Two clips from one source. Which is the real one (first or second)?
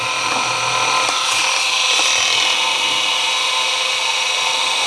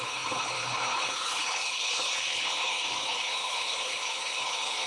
first